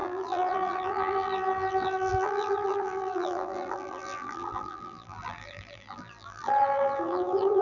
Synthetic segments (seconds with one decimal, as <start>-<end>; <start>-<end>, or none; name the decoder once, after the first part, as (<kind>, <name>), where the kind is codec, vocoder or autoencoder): 0.0-7.6 (vocoder, BigVGAN v2)